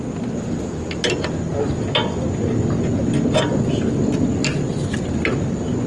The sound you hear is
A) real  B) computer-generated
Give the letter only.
A